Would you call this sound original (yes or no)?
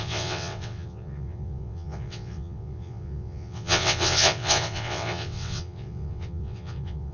no